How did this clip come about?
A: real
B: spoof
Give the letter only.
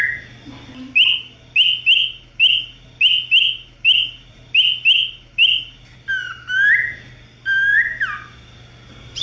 A